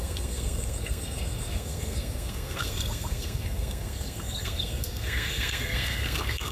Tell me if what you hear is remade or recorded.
remade